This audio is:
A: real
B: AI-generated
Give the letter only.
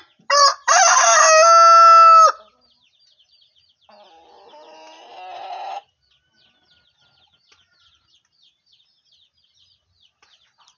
A